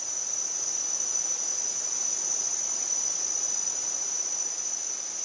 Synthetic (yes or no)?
no